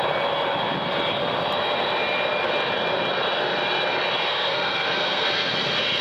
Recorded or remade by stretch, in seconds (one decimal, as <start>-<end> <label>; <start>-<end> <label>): 0.0-4.3 recorded; 4.3-5.5 remade; 5.5-6.0 recorded